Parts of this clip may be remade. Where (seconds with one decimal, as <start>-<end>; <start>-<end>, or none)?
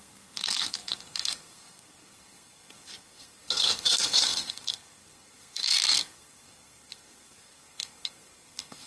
0.0-8.9